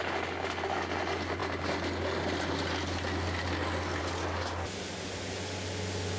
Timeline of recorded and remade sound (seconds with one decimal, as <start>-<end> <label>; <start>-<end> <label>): 0.0-6.2 recorded